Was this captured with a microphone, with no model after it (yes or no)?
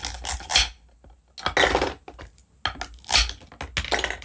yes